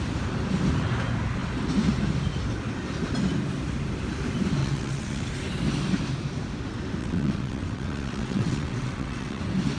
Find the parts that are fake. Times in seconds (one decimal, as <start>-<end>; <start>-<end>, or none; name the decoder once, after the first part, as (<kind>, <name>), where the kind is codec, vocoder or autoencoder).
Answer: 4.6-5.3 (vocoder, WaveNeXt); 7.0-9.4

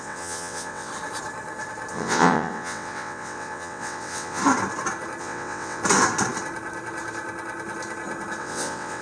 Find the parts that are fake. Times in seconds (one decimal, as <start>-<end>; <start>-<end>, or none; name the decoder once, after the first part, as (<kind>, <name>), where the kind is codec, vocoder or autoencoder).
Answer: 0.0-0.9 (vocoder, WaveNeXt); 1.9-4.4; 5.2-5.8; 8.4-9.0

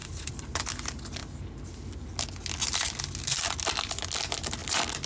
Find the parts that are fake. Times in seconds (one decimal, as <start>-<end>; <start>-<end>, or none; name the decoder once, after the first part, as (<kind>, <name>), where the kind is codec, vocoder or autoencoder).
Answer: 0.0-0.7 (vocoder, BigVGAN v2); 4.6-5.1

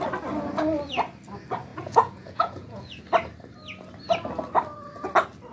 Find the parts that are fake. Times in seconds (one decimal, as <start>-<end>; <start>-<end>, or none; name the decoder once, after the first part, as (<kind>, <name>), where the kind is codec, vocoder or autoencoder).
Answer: 1.7-3.0 (vocoder, Vocos)